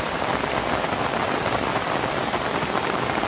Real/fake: real